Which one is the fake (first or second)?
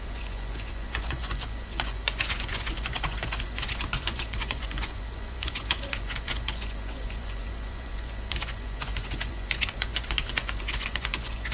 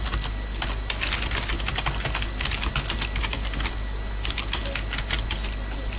first